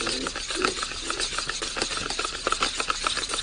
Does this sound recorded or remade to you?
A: recorded